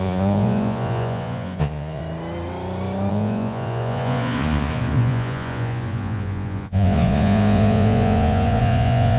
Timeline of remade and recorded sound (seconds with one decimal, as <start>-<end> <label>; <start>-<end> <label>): 0.0-2.0 remade; 2.0-3.1 recorded; 3.1-9.2 remade